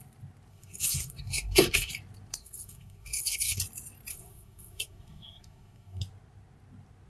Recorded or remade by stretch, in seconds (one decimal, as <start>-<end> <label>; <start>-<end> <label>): 0.0-0.5 recorded; 0.5-1.9 remade; 1.9-2.4 recorded; 2.4-3.6 remade; 3.6-4.1 recorded; 4.1-6.0 remade; 6.0-7.1 recorded